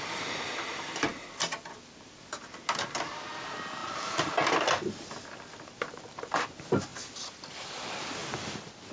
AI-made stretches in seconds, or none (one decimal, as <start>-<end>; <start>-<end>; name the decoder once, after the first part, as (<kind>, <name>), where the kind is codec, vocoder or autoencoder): 8.2-8.9 (vocoder, BigVGAN v2)